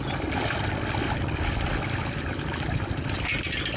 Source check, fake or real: real